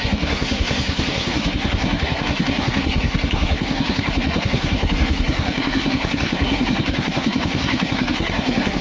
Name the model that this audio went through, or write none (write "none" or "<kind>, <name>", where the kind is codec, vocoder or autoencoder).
codec, SNAC